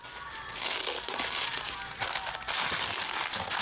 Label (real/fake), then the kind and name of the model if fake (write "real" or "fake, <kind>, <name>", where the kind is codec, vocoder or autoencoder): real